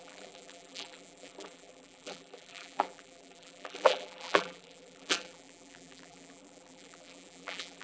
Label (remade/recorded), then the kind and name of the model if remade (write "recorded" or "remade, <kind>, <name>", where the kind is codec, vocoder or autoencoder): remade, vocoder, BigVGAN v2